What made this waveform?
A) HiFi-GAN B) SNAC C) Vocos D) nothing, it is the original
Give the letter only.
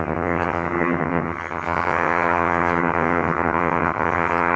A